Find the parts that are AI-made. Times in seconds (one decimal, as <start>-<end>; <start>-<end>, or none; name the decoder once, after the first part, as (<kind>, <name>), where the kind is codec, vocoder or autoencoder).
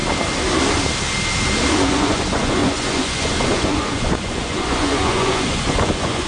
1.7-6.3 (vocoder, Vocos)